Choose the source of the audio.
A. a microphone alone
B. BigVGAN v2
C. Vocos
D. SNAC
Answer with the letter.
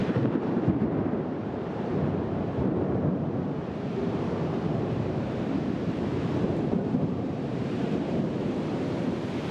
B